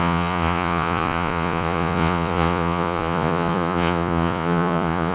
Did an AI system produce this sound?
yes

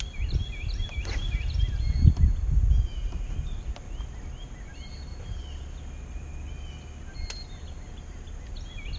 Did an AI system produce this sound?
no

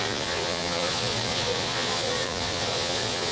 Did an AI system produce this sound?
yes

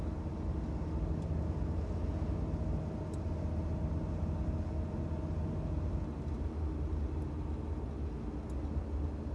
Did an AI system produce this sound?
no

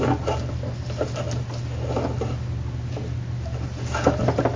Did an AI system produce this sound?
no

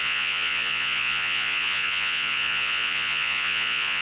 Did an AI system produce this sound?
yes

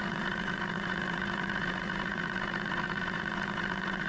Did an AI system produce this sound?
yes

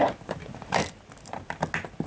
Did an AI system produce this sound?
no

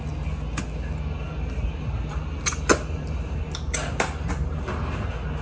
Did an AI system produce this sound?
no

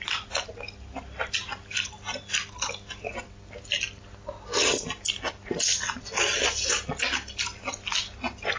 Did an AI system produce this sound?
no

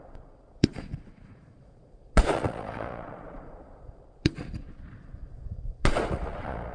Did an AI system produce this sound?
yes